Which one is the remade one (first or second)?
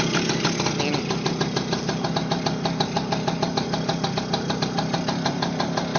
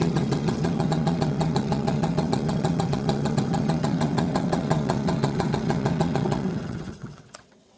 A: second